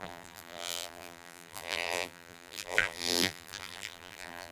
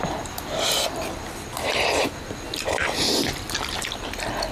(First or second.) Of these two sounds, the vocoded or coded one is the first